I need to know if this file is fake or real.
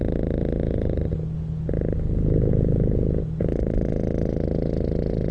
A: real